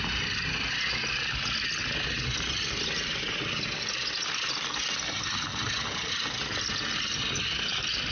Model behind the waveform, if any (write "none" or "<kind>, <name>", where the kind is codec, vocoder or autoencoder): none